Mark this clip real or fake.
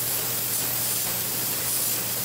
real